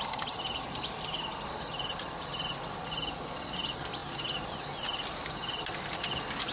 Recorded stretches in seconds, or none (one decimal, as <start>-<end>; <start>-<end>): 0.0-6.5